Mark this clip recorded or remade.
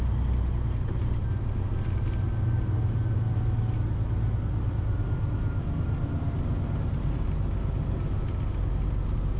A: recorded